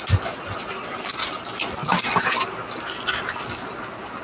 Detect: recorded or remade recorded